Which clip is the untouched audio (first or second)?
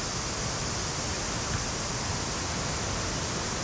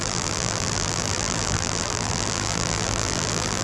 first